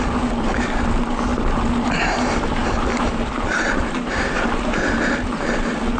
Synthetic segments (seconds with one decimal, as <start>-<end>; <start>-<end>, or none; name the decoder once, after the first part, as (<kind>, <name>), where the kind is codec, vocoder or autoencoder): none